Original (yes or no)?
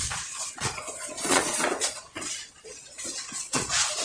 no